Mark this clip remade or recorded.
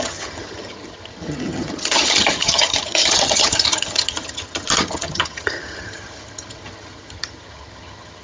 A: remade